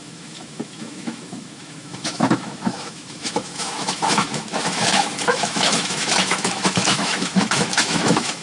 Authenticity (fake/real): fake